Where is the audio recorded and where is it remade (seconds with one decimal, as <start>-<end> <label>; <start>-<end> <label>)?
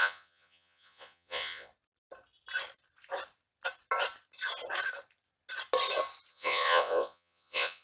0.0-1.7 remade; 1.7-6.3 recorded; 6.3-7.8 remade